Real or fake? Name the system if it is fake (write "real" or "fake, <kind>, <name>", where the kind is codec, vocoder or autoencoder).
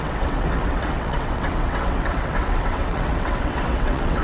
fake, vocoder, WaveNeXt